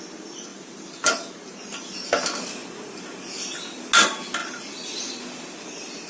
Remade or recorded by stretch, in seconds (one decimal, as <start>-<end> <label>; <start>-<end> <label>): 0.0-0.5 recorded; 0.5-1.4 remade; 1.4-6.1 recorded